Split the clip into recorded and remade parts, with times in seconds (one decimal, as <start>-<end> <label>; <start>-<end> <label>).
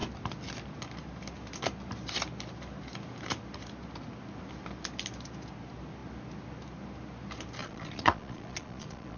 0.0-7.6 recorded; 7.6-9.2 remade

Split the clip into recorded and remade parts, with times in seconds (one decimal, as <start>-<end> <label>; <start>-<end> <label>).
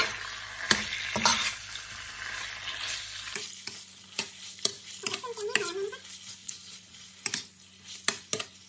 0.0-6.4 recorded; 6.4-7.1 remade; 7.1-8.7 recorded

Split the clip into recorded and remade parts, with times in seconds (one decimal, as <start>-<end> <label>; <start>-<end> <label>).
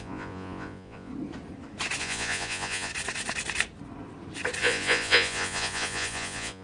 0.0-1.1 remade; 1.1-2.0 recorded; 2.0-2.9 remade; 2.9-4.6 recorded; 4.6-6.6 remade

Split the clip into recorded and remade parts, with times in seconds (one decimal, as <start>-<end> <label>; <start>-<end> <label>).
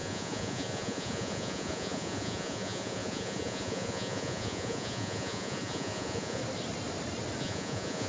0.0-6.4 remade; 6.4-7.4 recorded; 7.4-8.1 remade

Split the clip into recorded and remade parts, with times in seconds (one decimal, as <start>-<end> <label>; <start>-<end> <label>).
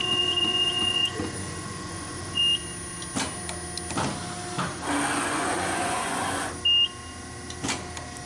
0.0-2.4 remade; 2.4-5.2 recorded; 5.2-6.5 remade; 6.5-8.3 recorded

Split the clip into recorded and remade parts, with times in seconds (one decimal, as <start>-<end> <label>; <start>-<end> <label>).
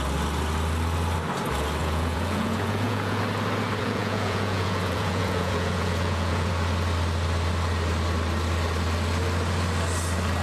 0.0-1.8 recorded; 1.8-3.2 remade; 3.2-3.8 recorded; 3.8-6.5 remade; 6.5-10.4 recorded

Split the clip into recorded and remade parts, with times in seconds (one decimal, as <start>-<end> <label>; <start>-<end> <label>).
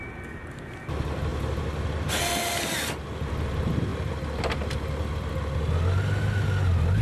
0.0-7.0 recorded